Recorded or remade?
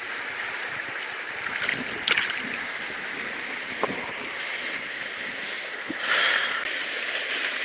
recorded